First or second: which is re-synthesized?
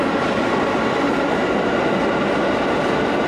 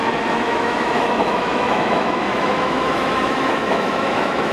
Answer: second